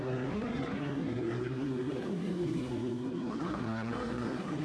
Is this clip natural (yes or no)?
no